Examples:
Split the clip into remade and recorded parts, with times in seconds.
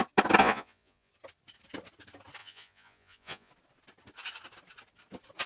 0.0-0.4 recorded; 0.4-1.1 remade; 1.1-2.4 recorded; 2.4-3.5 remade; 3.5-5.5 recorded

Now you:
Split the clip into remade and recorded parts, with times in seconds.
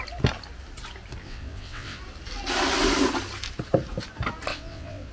0.0-1.2 recorded; 1.2-2.0 remade; 2.0-4.5 recorded; 4.5-5.1 remade